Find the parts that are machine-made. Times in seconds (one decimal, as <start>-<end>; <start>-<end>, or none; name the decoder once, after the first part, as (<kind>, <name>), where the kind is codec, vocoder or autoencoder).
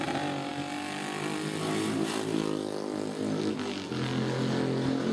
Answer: none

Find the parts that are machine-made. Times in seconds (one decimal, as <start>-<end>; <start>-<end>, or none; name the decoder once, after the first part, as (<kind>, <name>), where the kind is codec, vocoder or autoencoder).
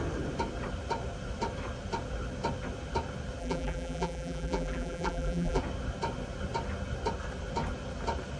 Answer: 3.4-5.6 (vocoder, BigVGAN v2)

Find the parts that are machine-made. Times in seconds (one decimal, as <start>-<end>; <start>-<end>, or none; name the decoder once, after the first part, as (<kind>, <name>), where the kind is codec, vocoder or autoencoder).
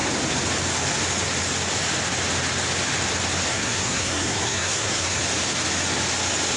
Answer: 3.5-5.2 (codec, SNAC)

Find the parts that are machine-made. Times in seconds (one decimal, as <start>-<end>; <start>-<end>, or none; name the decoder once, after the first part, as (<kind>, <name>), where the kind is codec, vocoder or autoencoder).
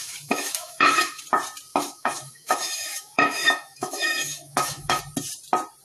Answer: 0.0-1.2 (autoencoder, DAC-VAE); 1.7-5.0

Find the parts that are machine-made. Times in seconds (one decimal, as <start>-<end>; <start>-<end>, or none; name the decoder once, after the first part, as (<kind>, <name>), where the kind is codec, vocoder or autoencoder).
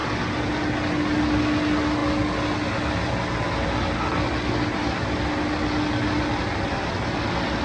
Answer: none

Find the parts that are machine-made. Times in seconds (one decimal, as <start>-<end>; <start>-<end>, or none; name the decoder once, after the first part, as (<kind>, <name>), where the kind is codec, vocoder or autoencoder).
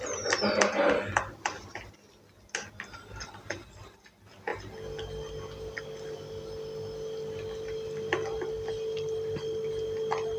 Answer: none